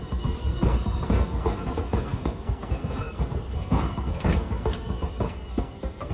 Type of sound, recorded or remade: remade